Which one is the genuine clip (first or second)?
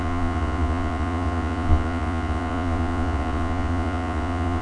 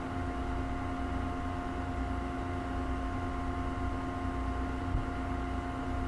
second